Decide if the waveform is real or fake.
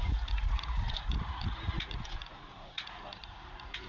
fake